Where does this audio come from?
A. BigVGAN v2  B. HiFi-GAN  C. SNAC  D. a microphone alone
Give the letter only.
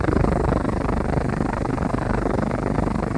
C